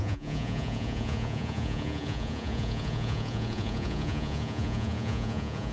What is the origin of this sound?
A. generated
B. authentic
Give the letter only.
A